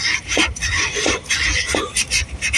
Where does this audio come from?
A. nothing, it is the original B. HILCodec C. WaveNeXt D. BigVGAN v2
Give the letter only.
D